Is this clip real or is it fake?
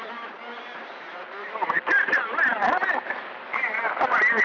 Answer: fake